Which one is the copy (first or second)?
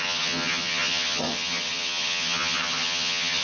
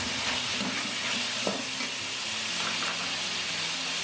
first